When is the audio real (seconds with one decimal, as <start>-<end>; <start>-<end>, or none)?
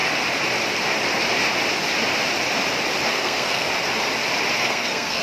0.0-3.1; 3.7-4.6